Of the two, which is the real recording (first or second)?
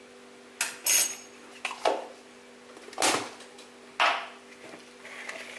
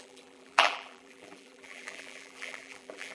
first